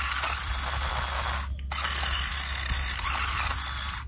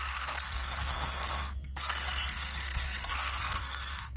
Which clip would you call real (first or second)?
first